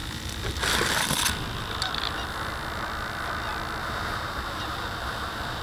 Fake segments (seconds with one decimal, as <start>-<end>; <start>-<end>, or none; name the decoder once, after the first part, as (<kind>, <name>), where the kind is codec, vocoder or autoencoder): 3.8-5.6 (vocoder, BigVGAN v2)

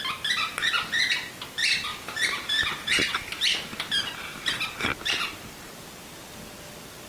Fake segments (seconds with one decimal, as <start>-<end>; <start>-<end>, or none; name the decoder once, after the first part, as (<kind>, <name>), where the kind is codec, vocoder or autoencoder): 1.9-2.9 (vocoder, BigVGAN v2)

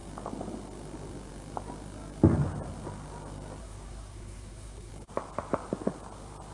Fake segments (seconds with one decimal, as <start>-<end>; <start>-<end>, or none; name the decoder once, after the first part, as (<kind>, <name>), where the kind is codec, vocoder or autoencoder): 3.6-4.9 (codec, SNAC)

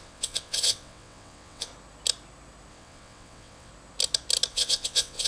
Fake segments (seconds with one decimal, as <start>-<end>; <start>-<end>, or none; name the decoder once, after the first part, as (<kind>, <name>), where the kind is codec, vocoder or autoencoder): 0.0-1.7 (vocoder, WaveNeXt); 2.7-3.7; 4.5-5.3

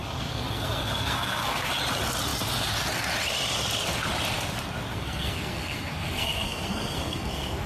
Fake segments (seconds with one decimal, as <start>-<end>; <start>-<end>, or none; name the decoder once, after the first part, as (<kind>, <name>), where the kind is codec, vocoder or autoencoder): 0.0-1.7 (codec, SNAC); 4.9-7.7